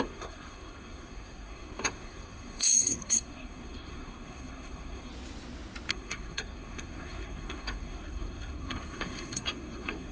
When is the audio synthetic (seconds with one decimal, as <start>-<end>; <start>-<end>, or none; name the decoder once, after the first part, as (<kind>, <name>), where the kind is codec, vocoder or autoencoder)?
0.0-5.1 (codec, SNAC); 5.9-10.1